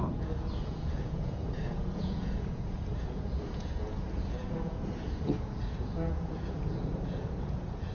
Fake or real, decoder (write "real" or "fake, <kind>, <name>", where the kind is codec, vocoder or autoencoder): fake, vocoder, Vocos